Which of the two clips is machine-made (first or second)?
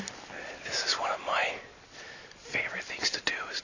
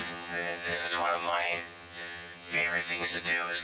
second